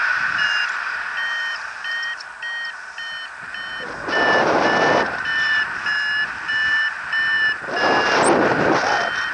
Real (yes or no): yes